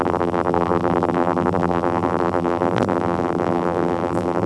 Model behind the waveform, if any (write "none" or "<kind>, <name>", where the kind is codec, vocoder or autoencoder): vocoder, BigVGAN v2